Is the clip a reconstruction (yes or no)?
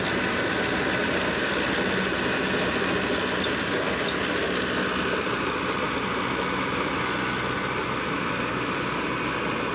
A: no